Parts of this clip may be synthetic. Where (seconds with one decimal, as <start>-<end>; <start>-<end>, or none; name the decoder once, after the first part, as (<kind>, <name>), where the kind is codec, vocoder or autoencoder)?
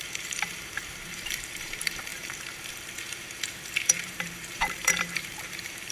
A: 0.0-5.9 (vocoder, BigVGAN v2)